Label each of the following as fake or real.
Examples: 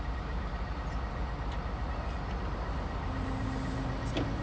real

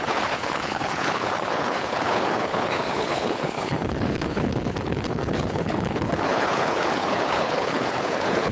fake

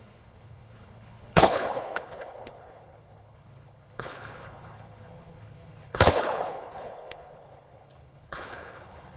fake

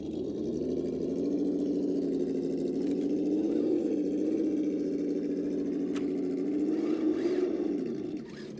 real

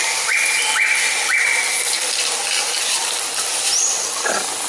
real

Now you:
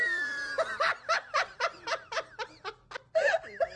real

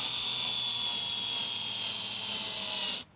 real